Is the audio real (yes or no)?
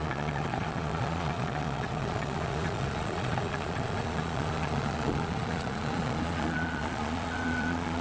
no